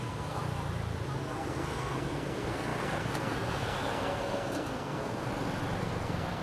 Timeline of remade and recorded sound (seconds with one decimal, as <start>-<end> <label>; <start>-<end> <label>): 0.0-0.4 remade; 0.4-1.2 recorded; 1.2-5.3 remade; 5.3-5.8 recorded; 5.8-6.4 remade